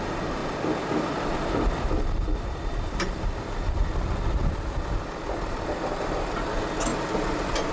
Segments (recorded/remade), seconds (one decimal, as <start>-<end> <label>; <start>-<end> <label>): 0.0-0.4 recorded; 0.4-5.0 remade; 5.0-6.9 recorded; 6.9-7.7 remade